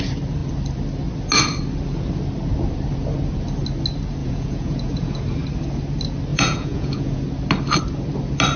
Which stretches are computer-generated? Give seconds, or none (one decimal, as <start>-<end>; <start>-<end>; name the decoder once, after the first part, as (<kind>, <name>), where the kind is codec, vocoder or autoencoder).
4.2-5.2 (vocoder, Vocos); 6.3-7.2

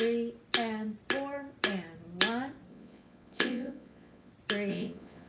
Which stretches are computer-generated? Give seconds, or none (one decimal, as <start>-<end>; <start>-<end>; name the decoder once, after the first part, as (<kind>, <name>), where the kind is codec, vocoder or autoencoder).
2.7-4.3 (vocoder, Vocos); 4.7-5.3

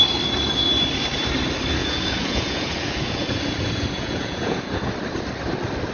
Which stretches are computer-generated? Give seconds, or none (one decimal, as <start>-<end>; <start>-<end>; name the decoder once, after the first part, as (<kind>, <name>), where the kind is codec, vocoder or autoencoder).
1.8-4.9 (vocoder, Vocos)

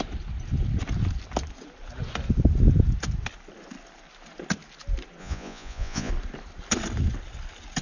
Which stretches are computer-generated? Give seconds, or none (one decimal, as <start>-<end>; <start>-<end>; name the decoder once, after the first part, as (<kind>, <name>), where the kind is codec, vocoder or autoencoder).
5.2-6.1 (vocoder, Vocos)

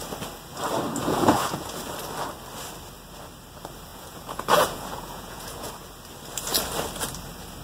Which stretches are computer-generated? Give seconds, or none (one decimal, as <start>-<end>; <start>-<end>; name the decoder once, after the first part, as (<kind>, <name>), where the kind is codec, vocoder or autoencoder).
1.0-1.8 (vocoder, Vocos); 3.9-5.7

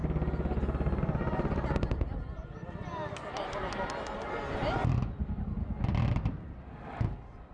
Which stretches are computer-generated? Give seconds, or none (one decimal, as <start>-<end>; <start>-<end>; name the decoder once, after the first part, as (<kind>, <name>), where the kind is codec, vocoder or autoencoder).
none

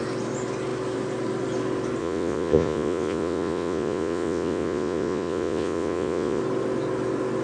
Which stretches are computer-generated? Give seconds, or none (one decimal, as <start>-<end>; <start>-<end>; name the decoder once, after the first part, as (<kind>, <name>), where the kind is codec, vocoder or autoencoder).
2.0-6.4 (vocoder, Vocos)